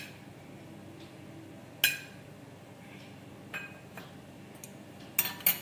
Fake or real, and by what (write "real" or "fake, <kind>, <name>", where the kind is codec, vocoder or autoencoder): real